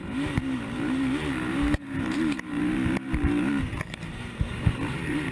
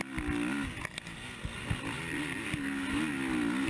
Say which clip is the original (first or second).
second